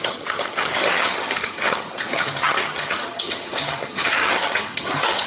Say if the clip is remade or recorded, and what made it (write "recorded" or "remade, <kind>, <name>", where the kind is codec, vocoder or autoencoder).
remade, vocoder, HiFi-GAN